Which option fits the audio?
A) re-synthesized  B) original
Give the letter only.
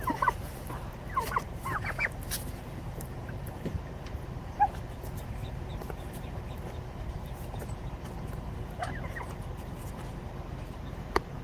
A